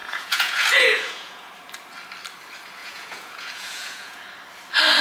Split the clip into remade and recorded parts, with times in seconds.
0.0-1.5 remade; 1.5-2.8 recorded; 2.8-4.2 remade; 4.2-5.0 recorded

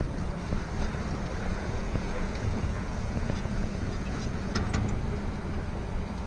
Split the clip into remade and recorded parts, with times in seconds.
0.0-1.5 recorded; 1.5-4.7 remade; 4.7-6.3 recorded

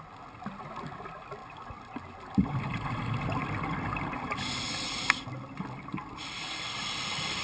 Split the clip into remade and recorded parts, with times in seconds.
0.0-7.4 recorded

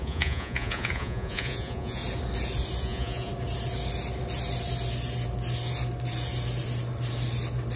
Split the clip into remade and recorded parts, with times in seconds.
0.0-2.0 remade; 2.0-2.8 recorded; 2.8-3.3 remade; 3.3-7.8 recorded

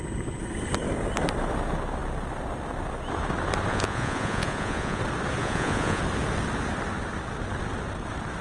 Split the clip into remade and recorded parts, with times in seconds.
0.0-3.7 recorded; 3.7-5.0 remade; 5.0-5.4 recorded; 5.4-6.0 remade; 6.0-8.4 recorded